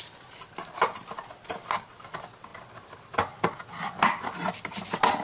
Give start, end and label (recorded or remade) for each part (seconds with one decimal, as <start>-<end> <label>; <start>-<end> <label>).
0.0-5.2 recorded